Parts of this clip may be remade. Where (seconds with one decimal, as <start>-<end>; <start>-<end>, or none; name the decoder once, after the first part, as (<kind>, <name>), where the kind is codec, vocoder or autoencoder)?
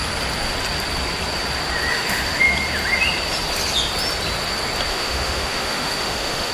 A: 1.9-2.4 (autoencoder, DAC-VAE); 4.9-6.5